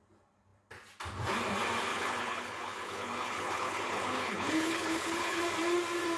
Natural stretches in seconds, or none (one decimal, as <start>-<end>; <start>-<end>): 0.0-1.9; 5.4-6.2